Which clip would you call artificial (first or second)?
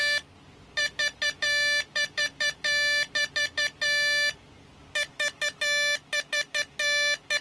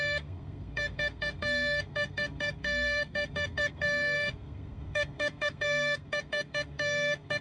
second